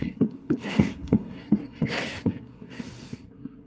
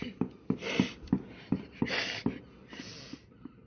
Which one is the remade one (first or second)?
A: first